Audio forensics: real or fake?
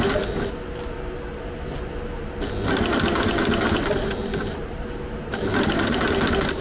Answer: real